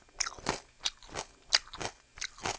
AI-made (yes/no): no